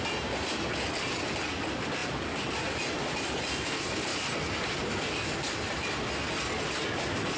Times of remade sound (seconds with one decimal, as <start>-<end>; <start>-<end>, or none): none